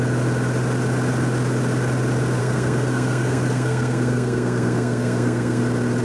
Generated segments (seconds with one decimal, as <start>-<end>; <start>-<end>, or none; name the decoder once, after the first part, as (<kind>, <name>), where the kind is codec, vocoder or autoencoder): 2.4-5.6 (codec, SNAC)